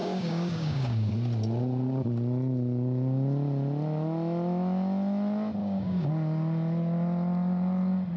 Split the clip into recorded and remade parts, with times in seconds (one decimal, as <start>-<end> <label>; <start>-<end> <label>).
0.0-1.1 remade; 1.1-5.6 recorded; 5.6-6.1 remade; 6.1-8.2 recorded